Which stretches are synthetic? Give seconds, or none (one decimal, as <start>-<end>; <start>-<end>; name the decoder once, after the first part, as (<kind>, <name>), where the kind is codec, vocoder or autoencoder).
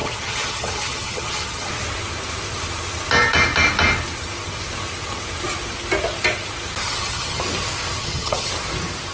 0.0-1.7 (vocoder, HiFi-GAN); 6.8-7.4; 8.0-8.5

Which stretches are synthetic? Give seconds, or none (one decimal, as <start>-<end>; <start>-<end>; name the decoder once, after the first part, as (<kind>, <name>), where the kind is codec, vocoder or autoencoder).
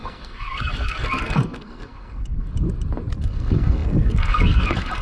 0.0-2.5 (codec, SNAC); 3.2-5.0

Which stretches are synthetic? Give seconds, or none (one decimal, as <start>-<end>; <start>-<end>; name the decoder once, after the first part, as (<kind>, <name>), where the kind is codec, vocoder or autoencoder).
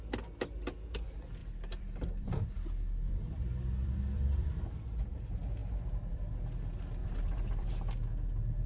1.4-4.6 (vocoder, BigVGAN v2); 7.0-7.7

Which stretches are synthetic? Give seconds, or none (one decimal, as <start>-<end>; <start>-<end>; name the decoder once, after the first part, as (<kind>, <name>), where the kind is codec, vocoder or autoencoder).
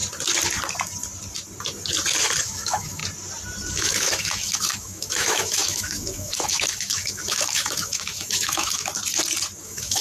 2.4-3.0 (autoencoder, DAC-VAE); 3.7-8.9; 9.6-10.0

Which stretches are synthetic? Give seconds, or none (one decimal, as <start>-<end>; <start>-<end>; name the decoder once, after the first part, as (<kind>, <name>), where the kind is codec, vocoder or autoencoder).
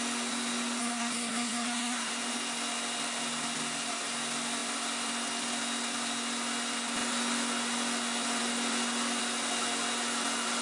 0.8-2.1 (codec, SNAC)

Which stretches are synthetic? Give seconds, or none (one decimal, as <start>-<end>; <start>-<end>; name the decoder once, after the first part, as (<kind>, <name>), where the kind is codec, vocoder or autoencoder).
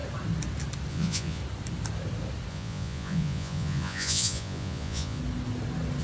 0.9-1.4 (vocoder, Vocos); 2.5-5.2